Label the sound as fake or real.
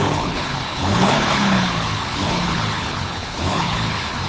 fake